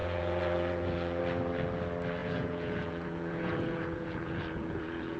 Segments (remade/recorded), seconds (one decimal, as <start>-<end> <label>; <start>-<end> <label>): 0.0-1.2 remade; 1.2-2.2 recorded; 2.2-5.2 remade